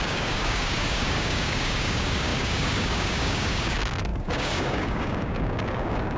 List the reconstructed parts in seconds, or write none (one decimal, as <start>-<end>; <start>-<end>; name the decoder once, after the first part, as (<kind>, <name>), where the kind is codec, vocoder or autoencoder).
0.0-6.2 (codec, DAC)